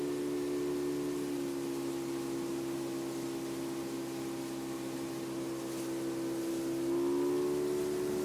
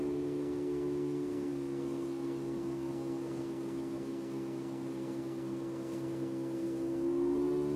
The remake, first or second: second